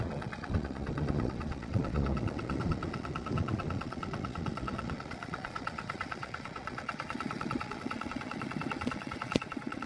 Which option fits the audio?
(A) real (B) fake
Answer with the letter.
B